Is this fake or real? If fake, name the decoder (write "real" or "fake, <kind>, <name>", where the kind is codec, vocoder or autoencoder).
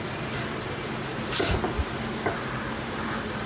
real